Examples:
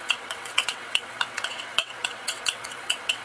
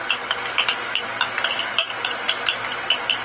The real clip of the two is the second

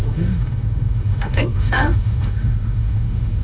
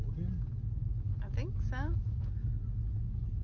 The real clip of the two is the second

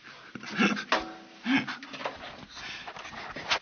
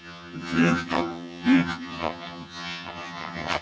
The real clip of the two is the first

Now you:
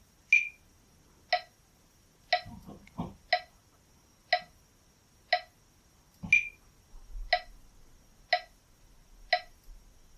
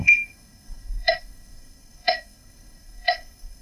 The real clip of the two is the first